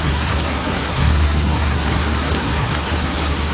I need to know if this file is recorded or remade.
remade